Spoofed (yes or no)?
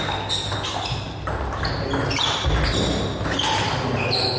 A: no